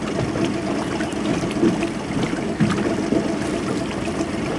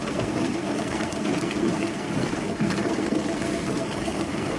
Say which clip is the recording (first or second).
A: first